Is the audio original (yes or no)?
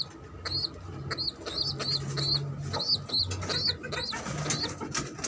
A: yes